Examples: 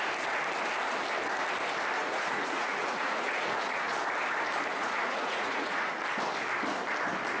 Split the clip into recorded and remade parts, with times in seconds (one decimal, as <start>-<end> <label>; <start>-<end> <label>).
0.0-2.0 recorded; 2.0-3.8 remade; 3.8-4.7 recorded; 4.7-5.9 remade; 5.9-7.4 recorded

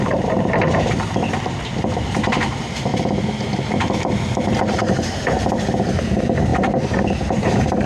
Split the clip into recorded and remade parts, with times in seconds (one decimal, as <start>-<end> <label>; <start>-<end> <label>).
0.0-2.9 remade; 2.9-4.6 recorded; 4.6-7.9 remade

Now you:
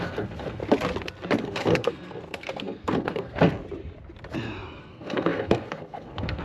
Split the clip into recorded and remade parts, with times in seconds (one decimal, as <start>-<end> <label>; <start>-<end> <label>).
0.0-0.6 remade; 0.6-1.4 recorded; 1.4-3.6 remade; 3.6-4.8 recorded; 4.8-6.4 remade